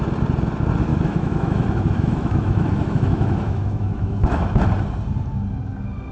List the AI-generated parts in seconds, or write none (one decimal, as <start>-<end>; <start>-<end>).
0.9-4.6